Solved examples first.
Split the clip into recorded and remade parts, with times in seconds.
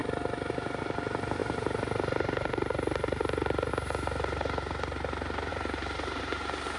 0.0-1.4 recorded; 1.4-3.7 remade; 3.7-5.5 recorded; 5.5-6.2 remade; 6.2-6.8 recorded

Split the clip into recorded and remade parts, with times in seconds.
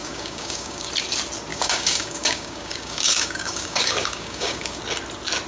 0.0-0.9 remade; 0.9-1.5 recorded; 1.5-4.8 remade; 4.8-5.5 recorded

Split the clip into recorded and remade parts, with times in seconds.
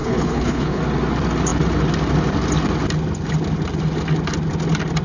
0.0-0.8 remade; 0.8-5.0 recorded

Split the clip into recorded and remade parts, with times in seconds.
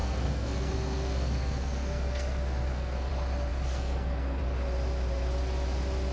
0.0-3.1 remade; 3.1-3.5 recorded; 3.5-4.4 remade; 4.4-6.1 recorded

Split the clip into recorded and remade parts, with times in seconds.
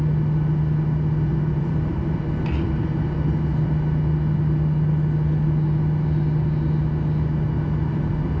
0.0-1.3 recorded; 1.3-2.1 remade; 2.1-8.4 recorded